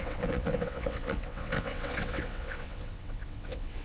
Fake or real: fake